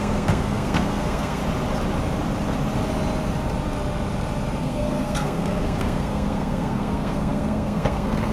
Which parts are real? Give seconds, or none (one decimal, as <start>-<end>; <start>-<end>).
1.4-4.6